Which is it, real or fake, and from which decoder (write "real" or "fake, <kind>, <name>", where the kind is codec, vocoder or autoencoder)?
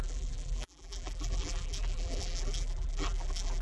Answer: fake, vocoder, BigVGAN v2